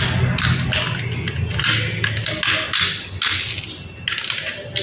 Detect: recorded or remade recorded